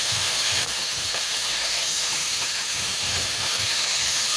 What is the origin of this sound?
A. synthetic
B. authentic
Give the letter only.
A